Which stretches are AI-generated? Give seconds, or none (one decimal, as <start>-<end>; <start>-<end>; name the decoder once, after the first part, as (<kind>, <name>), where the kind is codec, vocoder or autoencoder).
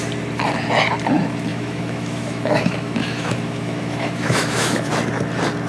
1.5-4.9 (autoencoder, DAC-VAE)